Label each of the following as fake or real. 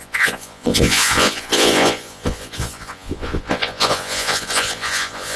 fake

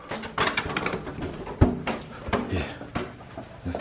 real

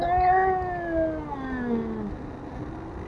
real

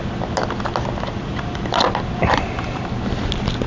real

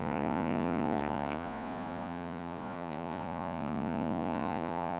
fake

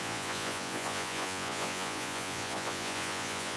fake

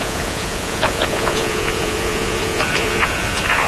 fake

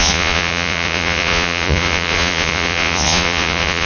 fake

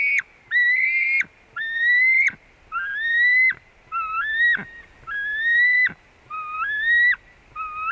real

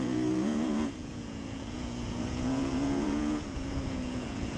fake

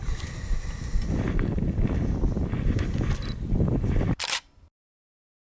real